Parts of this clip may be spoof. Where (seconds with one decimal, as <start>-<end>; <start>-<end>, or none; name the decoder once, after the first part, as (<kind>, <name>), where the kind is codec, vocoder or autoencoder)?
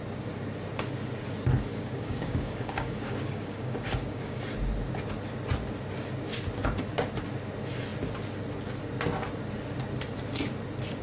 1.7-4.4 (codec, DAC)